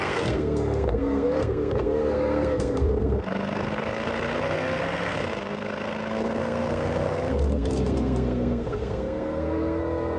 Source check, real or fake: fake